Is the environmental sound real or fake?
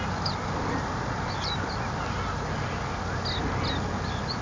real